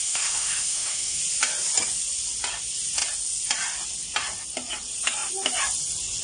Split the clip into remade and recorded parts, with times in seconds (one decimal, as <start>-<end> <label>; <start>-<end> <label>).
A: 0.0-1.2 remade; 1.2-6.2 recorded